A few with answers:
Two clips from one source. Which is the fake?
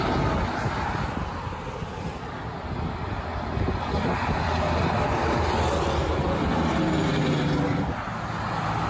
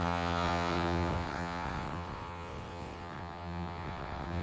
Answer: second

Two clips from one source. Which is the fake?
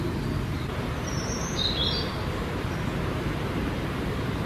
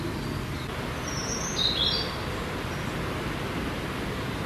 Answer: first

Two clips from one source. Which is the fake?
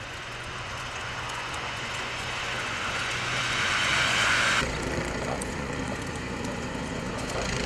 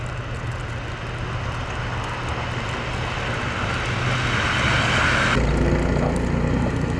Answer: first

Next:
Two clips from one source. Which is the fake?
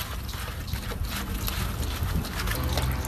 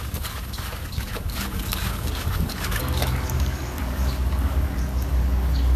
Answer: second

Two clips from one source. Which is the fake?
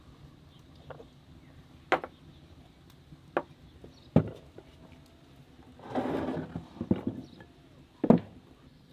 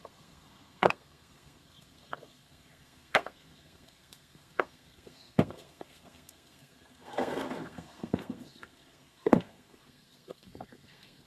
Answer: second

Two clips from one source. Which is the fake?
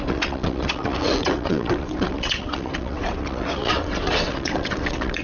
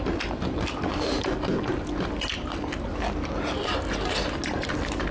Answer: first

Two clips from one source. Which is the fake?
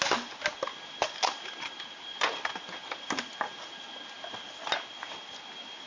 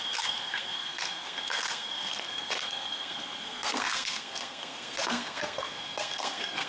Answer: second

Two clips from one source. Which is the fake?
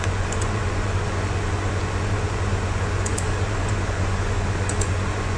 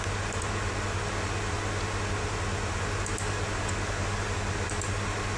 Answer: first